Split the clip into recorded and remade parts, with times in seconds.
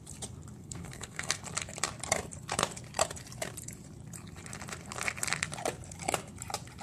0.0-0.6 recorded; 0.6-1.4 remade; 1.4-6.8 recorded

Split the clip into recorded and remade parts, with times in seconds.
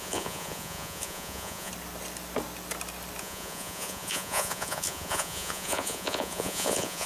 0.0-1.7 remade; 1.7-3.2 recorded; 3.2-7.1 remade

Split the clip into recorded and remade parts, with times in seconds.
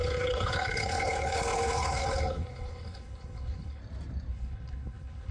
0.0-3.8 remade; 3.8-4.3 recorded; 4.3-5.3 remade